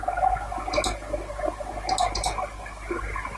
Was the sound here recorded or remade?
recorded